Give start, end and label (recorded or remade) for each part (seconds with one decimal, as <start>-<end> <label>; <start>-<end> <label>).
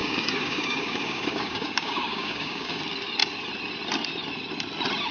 0.0-2.8 remade; 2.8-5.1 recorded